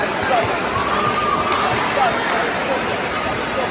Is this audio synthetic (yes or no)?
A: no